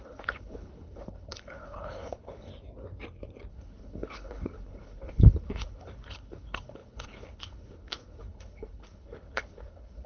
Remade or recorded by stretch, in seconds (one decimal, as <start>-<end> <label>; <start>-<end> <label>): 0.0-2.5 remade; 2.5-3.5 recorded; 3.5-10.1 remade

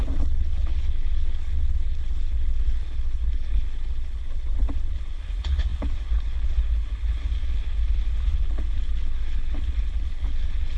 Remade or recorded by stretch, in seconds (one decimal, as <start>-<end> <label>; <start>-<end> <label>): 0.0-10.8 remade

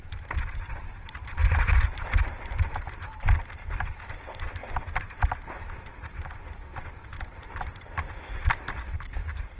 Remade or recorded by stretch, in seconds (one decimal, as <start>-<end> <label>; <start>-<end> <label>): 0.0-9.6 recorded

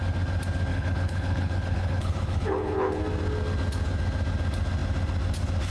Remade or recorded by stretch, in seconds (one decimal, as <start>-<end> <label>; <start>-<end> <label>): 0.0-0.7 recorded; 0.7-3.0 remade; 3.0-5.7 recorded

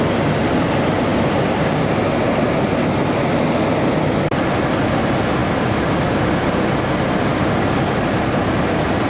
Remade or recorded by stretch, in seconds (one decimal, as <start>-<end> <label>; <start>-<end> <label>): 0.0-9.1 recorded

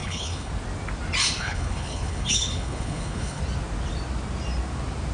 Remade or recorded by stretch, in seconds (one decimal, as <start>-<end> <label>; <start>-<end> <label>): 0.0-0.5 remade; 0.5-1.4 recorded; 1.4-3.4 remade; 3.4-5.1 recorded

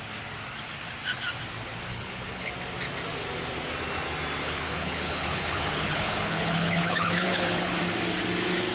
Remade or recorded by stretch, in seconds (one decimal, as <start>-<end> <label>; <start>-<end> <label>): 0.0-1.9 recorded; 1.9-2.5 remade; 2.5-4.4 recorded; 4.4-7.8 remade; 7.8-8.7 recorded